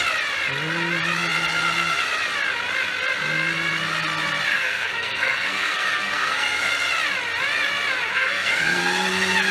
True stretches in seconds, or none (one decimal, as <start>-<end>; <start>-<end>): 0.0-4.5; 6.7-8.1; 8.8-9.5